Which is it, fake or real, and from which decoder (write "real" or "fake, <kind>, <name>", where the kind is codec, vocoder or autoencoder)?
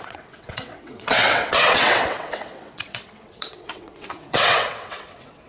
fake, vocoder, WaveNeXt